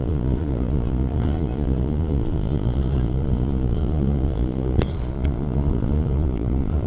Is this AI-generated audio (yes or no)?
yes